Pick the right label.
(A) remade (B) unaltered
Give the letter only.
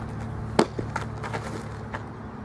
B